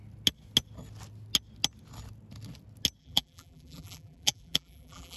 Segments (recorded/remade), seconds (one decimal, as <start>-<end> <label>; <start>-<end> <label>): 0.0-3.0 recorded; 3.0-5.2 remade